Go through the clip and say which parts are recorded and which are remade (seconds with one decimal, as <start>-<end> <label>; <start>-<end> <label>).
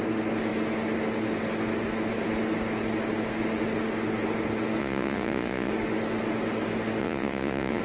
0.0-4.8 recorded; 4.8-5.7 remade; 5.7-7.0 recorded; 7.0-7.8 remade